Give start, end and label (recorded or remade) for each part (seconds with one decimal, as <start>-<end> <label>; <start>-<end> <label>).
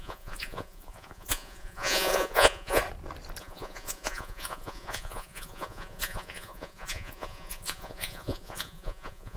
0.0-2.8 remade; 2.8-3.4 recorded; 3.4-9.4 remade